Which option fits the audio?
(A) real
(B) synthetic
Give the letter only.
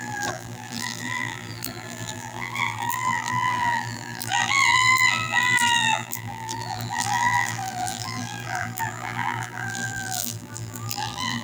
B